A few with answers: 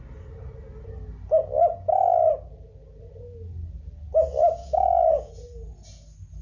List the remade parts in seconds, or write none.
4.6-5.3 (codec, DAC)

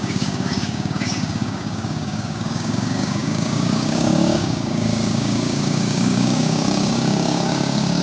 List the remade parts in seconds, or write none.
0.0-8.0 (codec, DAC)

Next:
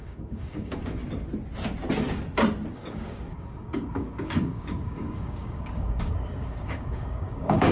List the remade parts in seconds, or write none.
0.0-1.0 (codec, DAC); 2.7-7.7